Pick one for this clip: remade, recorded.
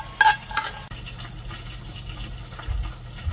recorded